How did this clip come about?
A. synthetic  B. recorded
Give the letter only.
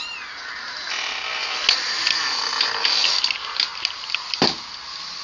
B